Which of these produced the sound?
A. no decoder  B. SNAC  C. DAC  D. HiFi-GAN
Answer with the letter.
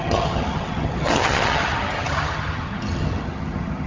D